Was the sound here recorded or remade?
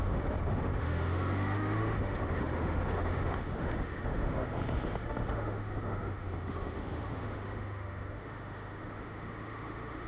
remade